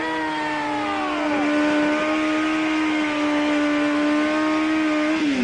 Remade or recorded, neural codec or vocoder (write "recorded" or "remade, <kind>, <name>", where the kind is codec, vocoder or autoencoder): recorded